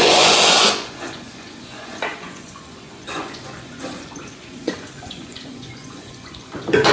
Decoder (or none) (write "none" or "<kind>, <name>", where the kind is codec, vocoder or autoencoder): vocoder, Vocos